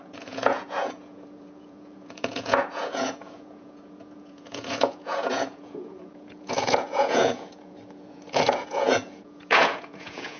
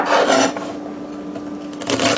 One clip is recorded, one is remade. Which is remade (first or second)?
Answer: first